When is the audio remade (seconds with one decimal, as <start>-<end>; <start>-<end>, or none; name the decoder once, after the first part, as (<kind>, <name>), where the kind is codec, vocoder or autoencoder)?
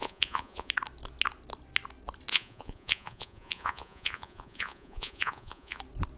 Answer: 0.0-0.7 (vocoder, Vocos); 2.3-5.8